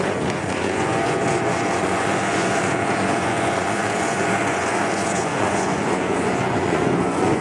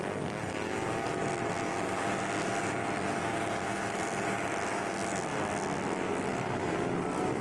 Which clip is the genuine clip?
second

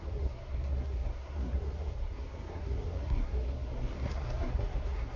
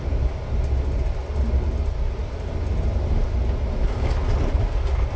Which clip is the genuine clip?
second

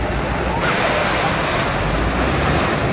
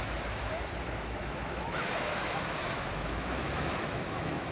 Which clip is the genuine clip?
first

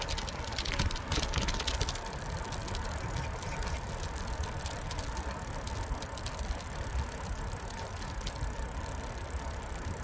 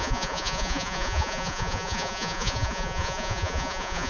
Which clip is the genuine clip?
first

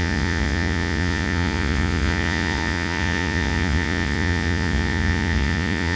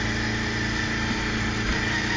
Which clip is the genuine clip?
second